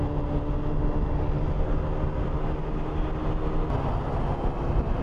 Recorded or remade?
recorded